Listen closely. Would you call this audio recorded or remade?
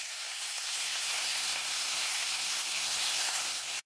remade